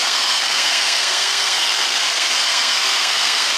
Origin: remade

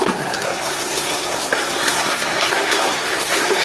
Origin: remade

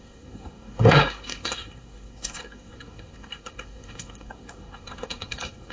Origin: remade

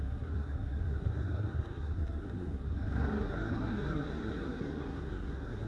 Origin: remade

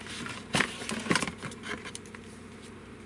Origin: recorded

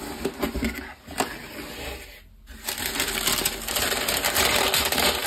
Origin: recorded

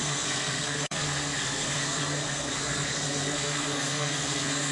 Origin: remade